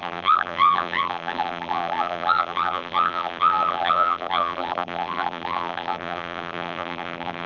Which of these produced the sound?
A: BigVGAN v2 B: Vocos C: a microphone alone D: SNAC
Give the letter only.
A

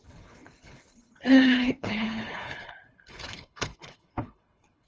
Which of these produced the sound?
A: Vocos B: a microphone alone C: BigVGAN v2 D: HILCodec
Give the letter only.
D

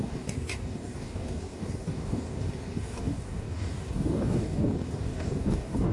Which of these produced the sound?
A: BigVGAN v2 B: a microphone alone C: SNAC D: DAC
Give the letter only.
D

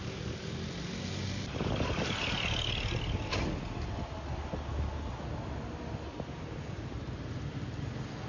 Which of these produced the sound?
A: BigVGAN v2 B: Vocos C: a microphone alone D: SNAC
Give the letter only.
C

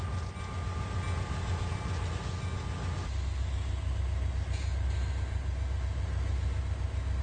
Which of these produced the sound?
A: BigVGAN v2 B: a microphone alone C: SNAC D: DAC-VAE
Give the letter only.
B